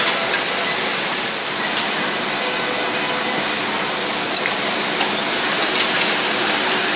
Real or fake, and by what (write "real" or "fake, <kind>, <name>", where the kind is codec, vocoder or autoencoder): real